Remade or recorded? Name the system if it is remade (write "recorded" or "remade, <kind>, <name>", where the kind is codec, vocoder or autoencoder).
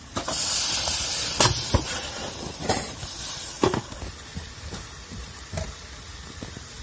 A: recorded